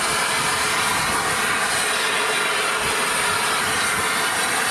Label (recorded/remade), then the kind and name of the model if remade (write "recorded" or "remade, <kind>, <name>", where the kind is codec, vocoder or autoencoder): recorded